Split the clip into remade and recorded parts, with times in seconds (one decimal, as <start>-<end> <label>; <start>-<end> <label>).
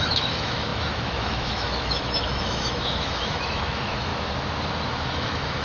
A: 0.0-4.1 remade; 4.1-4.9 recorded; 4.9-5.6 remade